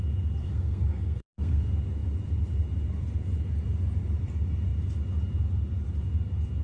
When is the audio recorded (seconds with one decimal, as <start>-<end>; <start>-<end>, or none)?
0.0-0.4; 1.6-6.6